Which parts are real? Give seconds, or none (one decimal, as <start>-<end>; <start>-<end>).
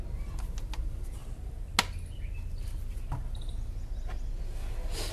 0.0-5.1